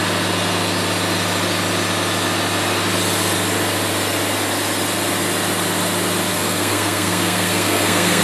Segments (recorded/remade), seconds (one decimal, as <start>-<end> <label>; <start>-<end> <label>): 0.0-6.3 recorded; 6.3-8.2 remade